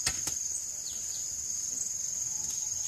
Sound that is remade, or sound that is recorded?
recorded